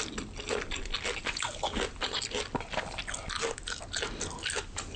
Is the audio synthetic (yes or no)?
no